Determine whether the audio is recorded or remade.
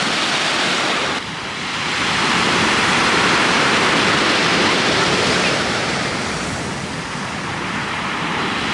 remade